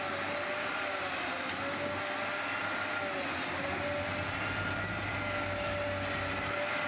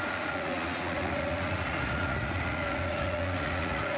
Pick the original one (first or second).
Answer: first